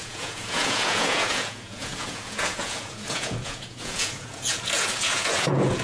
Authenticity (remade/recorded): remade